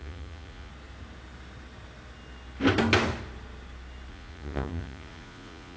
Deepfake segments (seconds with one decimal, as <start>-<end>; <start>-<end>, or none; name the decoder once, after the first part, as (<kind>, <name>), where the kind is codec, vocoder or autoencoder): 0.0-0.7 (vocoder, Vocos); 4.1-5.8